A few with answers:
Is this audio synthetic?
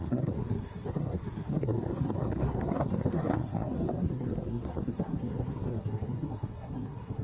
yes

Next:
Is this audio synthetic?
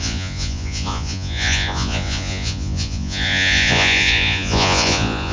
yes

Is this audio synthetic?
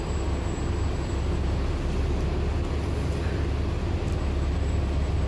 no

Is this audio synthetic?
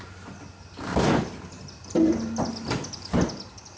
no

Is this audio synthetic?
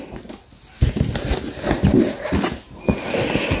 no